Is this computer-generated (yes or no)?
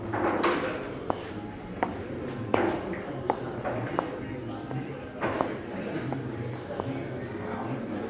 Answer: no